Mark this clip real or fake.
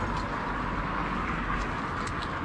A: real